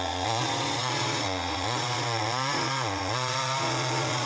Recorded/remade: remade